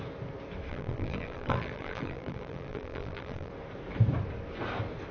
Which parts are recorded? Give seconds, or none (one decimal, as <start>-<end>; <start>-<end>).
0.0-0.7; 3.5-5.1

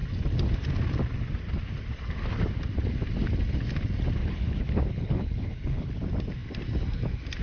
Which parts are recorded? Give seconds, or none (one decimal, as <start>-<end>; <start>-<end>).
0.0-4.2; 5.9-7.4

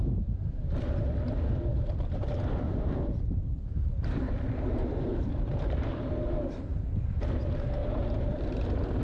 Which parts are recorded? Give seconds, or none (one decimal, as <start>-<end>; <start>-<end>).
0.0-1.7; 6.1-7.8

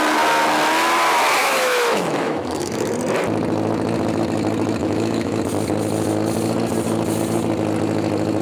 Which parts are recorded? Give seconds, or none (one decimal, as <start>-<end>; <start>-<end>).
0.0-1.4; 2.9-4.8; 5.4-8.4

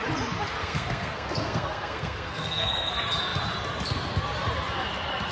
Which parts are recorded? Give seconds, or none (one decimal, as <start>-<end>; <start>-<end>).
0.0-0.6; 2.9-5.3

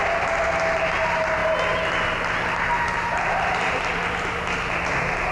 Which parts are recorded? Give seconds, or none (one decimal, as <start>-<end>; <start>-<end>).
0.0-5.3

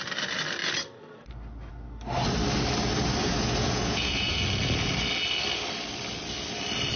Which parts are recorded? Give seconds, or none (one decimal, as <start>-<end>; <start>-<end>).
0.0-3.2; 4.4-7.0